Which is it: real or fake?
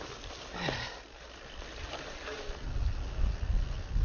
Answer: real